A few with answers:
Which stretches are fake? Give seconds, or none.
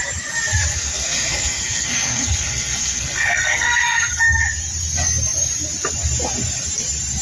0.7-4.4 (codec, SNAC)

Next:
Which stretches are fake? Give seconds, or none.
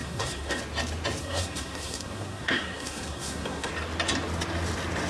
0.0-0.6 (codec, SNAC); 1.2-3.7